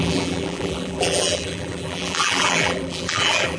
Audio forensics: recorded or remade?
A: remade